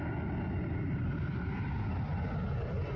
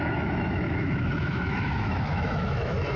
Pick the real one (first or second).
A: first